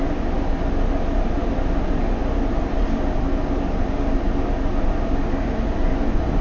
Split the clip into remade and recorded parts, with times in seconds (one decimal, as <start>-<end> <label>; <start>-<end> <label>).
0.0-6.4 recorded